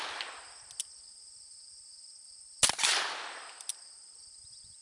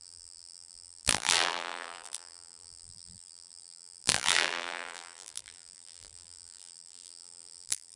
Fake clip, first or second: second